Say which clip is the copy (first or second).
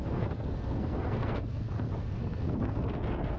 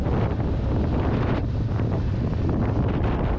first